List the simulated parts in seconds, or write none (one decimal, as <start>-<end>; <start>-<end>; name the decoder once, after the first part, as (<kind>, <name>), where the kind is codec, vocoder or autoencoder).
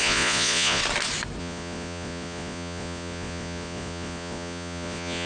0.0-0.8 (vocoder, Vocos); 1.4-5.3